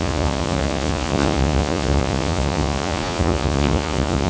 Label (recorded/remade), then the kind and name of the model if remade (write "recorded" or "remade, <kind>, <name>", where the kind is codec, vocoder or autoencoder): remade, vocoder, Vocos